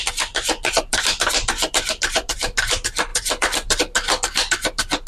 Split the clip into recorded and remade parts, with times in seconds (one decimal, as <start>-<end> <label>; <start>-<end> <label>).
0.0-0.9 recorded; 0.9-1.5 remade; 1.5-3.1 recorded; 3.1-3.8 remade; 3.8-5.1 recorded